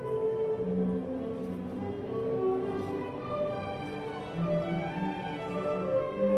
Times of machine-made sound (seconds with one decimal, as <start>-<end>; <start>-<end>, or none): 5.8-6.4